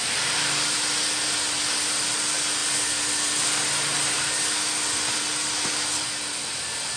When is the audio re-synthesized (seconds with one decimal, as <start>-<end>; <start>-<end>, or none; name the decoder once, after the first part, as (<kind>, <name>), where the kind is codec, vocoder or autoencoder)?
none